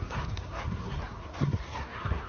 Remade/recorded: remade